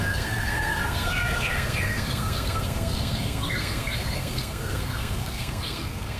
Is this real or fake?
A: fake